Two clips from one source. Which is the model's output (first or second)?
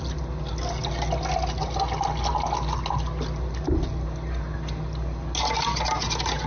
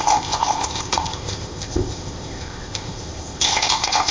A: second